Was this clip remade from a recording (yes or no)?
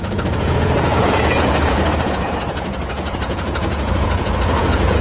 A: yes